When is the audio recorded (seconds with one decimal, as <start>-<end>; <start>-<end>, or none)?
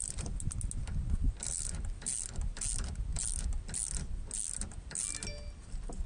0.0-6.1